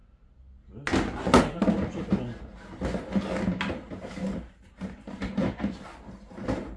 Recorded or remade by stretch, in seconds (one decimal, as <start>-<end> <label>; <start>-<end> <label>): 0.0-1.4 recorded; 1.4-2.1 remade; 2.1-3.7 recorded; 3.7-6.8 remade